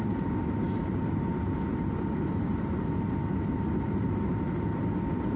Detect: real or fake real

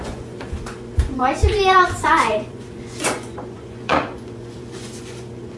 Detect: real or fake fake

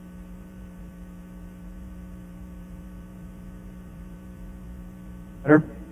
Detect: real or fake fake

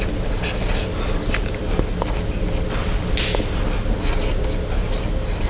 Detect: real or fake real